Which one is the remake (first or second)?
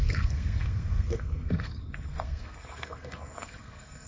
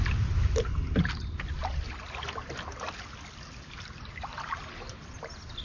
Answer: first